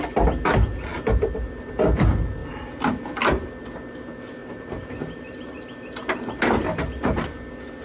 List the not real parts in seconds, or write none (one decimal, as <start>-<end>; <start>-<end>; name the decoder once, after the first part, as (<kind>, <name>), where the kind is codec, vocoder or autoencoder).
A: 4.4-5.6 (vocoder, BigVGAN v2)